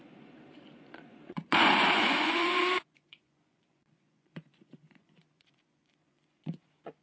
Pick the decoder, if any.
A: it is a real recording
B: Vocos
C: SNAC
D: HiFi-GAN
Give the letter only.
B